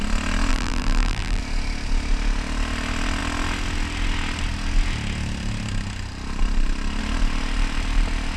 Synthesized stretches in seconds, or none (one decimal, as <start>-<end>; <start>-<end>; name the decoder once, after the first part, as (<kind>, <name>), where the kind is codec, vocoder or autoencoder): 0.5-1.4 (vocoder, BigVGAN v2)